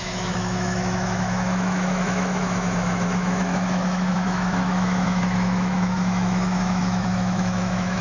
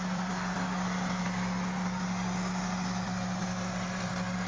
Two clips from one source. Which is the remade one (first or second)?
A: first